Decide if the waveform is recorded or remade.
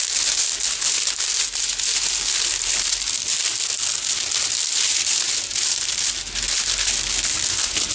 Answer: recorded